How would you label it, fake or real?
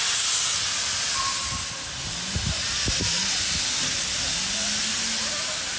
real